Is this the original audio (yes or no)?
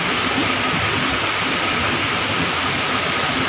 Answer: no